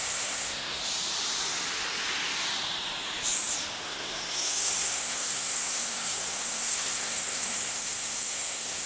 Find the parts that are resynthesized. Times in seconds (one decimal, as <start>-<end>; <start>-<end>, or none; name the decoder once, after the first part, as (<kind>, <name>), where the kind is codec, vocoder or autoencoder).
0.0-0.8 (codec, SNAC); 3.8-8.9